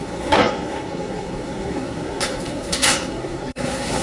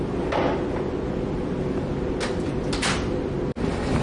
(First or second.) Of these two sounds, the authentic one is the second